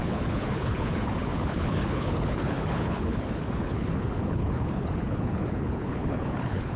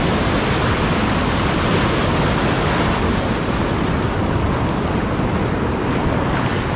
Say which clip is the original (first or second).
second